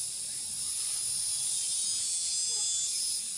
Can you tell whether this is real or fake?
real